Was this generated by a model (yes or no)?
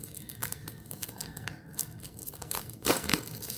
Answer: yes